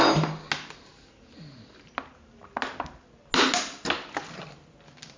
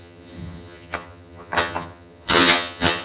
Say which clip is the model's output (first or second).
second